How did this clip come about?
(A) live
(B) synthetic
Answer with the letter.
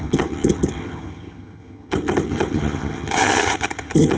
B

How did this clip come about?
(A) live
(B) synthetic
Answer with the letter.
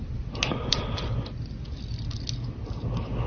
A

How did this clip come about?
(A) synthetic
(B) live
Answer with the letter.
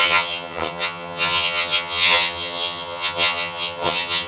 A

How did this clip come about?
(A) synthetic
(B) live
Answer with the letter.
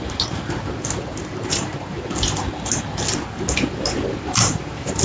B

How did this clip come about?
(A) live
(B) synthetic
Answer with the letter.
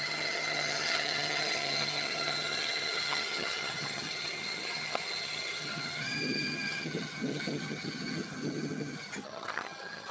B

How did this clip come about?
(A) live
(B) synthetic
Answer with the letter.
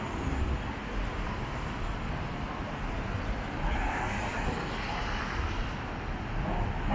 A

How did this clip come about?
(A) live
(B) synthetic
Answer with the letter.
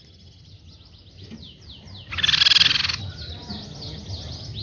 A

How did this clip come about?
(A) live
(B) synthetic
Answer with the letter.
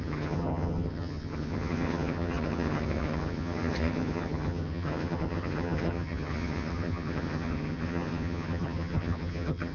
B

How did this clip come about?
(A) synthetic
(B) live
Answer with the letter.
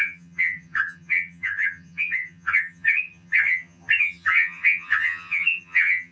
A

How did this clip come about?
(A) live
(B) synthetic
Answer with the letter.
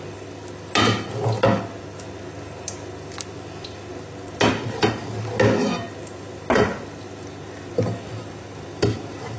A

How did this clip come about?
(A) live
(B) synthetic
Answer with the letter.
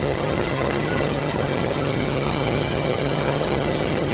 B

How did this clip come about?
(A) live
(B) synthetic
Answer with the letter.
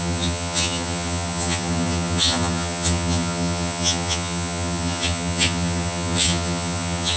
B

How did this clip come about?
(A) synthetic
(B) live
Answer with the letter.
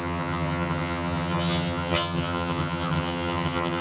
A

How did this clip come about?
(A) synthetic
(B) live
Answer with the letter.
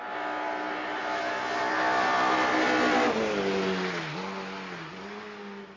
B